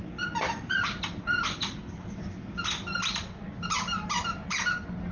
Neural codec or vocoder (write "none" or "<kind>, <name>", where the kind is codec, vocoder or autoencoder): none